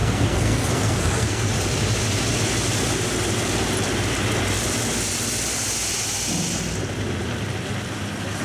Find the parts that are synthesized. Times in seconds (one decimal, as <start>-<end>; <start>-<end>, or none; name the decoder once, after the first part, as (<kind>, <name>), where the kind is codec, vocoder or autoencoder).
0.0-1.5 (codec, SNAC)